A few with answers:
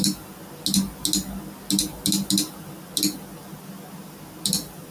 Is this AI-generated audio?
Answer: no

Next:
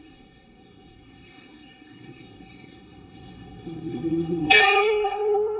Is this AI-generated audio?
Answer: yes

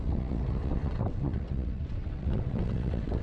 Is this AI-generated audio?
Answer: yes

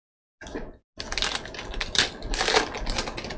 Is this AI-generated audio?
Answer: no